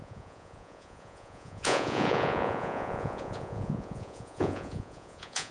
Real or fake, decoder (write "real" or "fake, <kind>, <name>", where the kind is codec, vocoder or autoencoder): fake, vocoder, Vocos